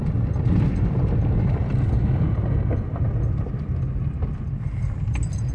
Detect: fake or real real